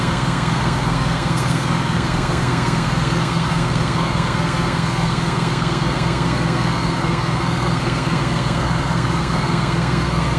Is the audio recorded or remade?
remade